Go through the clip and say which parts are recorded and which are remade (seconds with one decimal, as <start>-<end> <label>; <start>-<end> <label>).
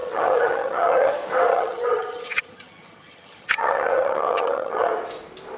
0.0-1.1 remade; 1.1-1.5 recorded; 1.5-4.9 remade; 4.9-5.6 recorded